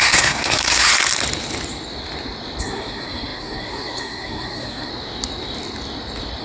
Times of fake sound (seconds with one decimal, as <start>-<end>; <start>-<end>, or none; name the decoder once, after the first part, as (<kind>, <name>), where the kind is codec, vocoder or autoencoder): 0.0-0.9 (codec, SNAC); 2.6-4.9